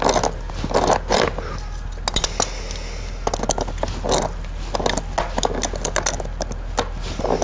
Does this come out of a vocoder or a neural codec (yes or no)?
no